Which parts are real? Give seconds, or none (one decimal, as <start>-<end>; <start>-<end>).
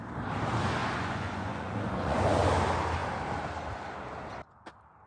0.0-0.8; 2.2-5.1